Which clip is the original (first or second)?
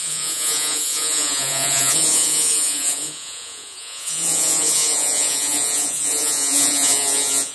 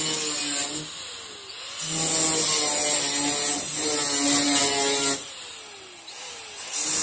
second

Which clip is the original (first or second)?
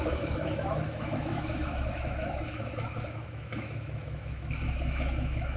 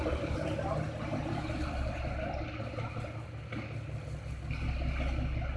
second